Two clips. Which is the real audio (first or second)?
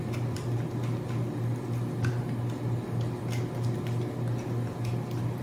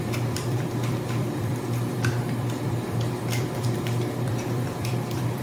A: first